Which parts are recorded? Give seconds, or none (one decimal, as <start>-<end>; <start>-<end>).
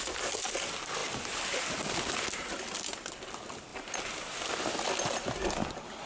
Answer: 0.0-6.1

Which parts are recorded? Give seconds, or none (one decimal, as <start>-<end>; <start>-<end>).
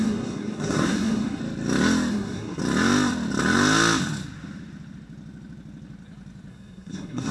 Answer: 1.4-2.1; 2.6-6.5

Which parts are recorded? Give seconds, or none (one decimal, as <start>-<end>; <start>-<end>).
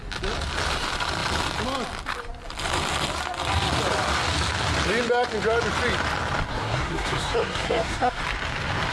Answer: 0.0-6.5; 8.2-8.9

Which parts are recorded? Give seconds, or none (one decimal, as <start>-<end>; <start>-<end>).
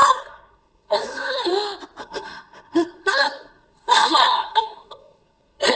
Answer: 1.5-2.0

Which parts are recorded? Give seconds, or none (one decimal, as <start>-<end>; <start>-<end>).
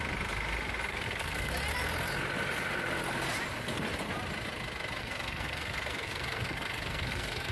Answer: 0.0-0.9; 1.5-5.0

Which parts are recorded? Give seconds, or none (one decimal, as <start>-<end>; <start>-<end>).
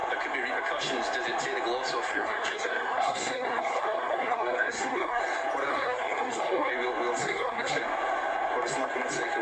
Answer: 0.0-2.1; 5.2-5.7; 6.7-7.2; 7.8-9.4